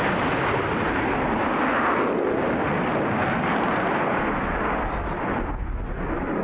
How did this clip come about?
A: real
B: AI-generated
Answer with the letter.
A